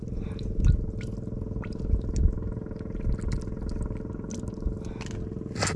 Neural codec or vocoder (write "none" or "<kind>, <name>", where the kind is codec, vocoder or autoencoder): none